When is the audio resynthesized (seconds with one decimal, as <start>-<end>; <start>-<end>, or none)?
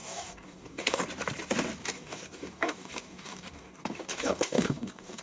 0.0-1.0; 1.8-5.2